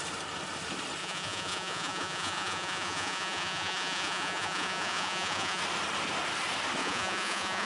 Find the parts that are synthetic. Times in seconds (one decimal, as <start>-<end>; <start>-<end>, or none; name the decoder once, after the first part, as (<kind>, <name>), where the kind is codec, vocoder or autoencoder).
1.0-5.6 (vocoder, Vocos); 6.8-7.7